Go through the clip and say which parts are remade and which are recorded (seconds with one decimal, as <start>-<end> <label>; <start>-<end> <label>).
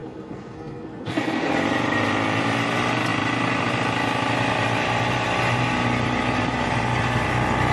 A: 0.0-1.5 remade; 1.5-7.7 recorded